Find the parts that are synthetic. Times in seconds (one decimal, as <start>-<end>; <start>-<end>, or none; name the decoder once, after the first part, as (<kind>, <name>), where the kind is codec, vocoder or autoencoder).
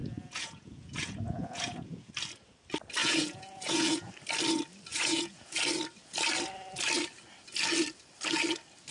0.0-2.1 (vocoder, Vocos); 3.0-4.1; 4.9-5.6